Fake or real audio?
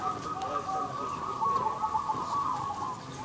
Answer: real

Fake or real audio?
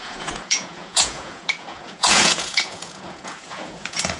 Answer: fake